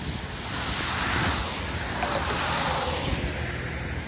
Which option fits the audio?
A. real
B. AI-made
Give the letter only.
A